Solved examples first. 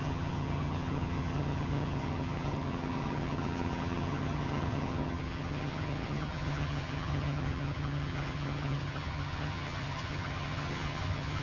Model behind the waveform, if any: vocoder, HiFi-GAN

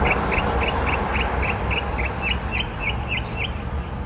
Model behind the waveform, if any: none